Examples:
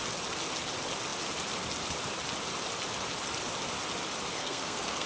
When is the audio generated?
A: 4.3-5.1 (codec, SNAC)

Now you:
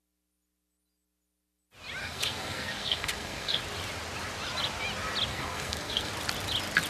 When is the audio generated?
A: 2.0-3.6 (codec, SNAC); 5.3-6.1

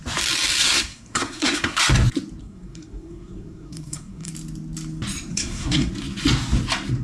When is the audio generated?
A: 0.6-1.8 (codec, SNAC); 2.4-4.3; 5.3-5.9

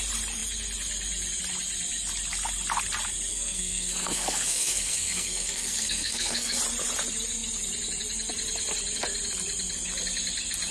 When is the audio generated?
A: 3.3-6.6 (codec, SNAC)

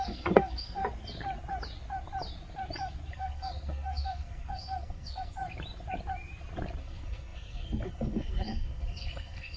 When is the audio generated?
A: 0.0-0.8 (codec, SNAC); 3.1-5.4; 6.8-9.6

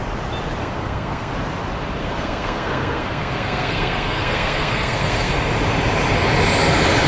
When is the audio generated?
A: 0.6-1.3 (codec, SNAC); 2.0-5.3

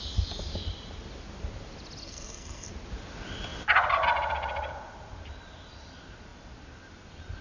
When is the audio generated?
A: 2.0-2.7 (codec, SNAC)

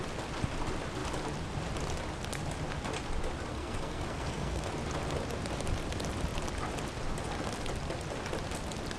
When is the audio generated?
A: 3.5-4.7 (codec, SNAC)